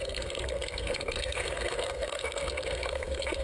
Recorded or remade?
remade